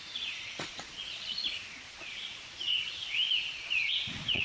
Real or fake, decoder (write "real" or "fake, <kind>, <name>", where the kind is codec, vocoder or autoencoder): fake, vocoder, Vocos